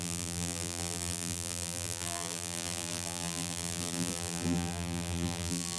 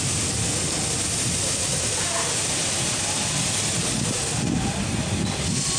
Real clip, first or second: second